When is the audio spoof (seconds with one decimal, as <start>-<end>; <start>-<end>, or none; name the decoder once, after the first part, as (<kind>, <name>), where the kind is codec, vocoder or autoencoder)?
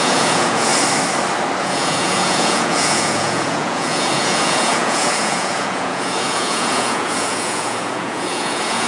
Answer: 0.0-0.7 (vocoder, Vocos); 1.6-8.9